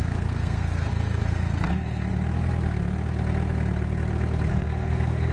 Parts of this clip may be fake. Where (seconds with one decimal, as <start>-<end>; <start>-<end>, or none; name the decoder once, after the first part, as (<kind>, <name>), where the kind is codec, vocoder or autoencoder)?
0.0-2.1 (codec, SNAC); 4.5-5.3